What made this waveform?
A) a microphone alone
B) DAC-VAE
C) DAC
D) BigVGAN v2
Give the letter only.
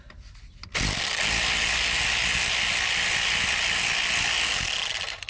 A